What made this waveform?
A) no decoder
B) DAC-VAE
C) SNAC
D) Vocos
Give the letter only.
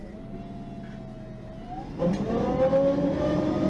A